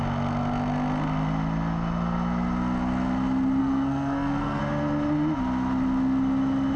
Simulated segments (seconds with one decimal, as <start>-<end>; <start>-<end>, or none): 3.6-4.6